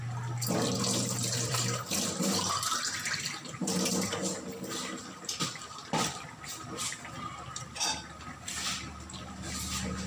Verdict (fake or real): fake